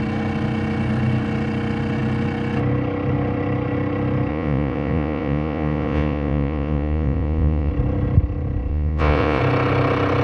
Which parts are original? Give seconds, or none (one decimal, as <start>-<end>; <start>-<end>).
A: 0.0-4.3; 7.7-8.7; 9.4-10.2